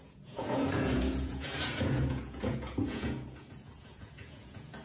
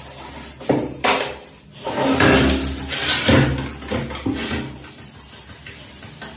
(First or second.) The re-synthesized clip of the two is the first